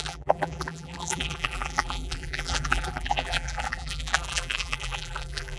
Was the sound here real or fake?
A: fake